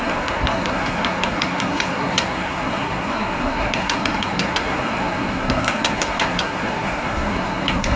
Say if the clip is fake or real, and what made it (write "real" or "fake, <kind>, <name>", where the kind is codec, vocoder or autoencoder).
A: fake, codec, SNAC